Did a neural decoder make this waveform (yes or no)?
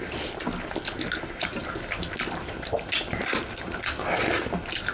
no